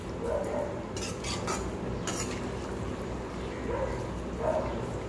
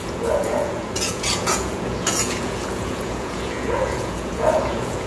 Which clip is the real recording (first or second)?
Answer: first